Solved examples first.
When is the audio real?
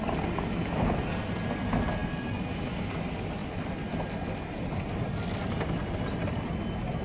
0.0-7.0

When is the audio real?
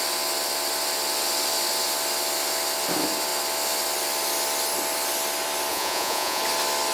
0.0-5.7; 6.4-6.9